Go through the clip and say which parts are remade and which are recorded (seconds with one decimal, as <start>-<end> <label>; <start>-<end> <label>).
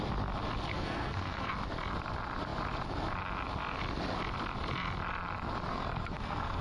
0.0-0.7 recorded; 0.7-1.5 remade; 1.5-5.7 recorded; 5.7-6.6 remade